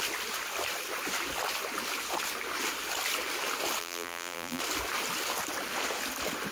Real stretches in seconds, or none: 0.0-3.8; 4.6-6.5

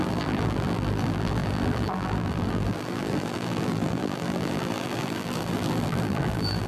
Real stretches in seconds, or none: none